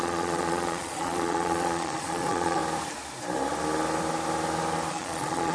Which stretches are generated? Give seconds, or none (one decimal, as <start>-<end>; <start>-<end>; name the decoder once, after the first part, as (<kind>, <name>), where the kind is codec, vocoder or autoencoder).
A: 0.0-2.6 (vocoder, Vocos); 4.9-5.5